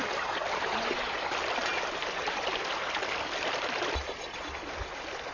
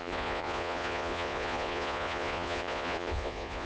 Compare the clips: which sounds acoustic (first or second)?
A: first